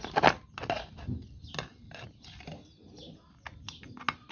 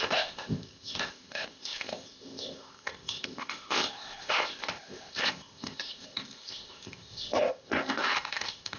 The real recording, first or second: first